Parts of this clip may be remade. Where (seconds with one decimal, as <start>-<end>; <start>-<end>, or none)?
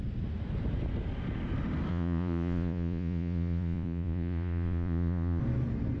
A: 1.9-5.4